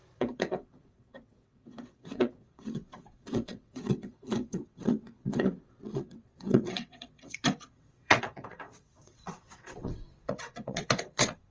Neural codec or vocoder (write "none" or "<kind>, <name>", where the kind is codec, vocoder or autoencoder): vocoder, WaveNeXt